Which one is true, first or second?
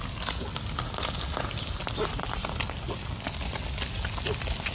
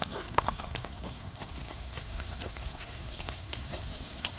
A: first